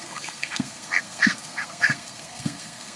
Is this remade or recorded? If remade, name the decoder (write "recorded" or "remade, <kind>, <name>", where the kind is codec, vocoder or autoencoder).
remade, codec, SNAC